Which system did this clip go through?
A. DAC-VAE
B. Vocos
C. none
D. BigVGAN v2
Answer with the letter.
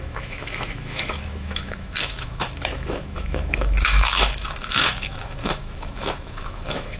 A